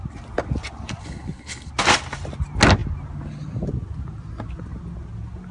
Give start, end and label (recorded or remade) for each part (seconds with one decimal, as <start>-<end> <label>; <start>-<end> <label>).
0.0-1.0 recorded; 1.0-1.7 remade; 1.7-5.5 recorded